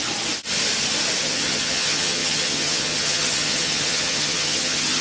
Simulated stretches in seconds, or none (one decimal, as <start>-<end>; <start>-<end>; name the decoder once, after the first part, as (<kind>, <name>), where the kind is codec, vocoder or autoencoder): 1.2-5.0 (vocoder, HiFi-GAN)